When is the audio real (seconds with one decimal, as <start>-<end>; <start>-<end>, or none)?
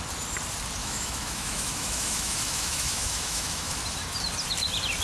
0.0-0.8; 3.8-5.0